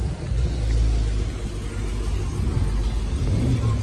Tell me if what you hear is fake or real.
real